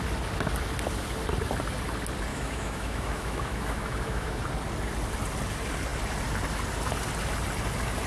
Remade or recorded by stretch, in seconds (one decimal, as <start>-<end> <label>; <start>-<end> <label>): 0.0-2.3 recorded; 2.3-4.4 remade; 4.4-8.1 recorded